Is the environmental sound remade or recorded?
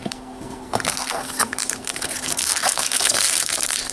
remade